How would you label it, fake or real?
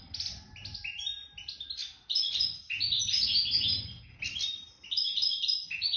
real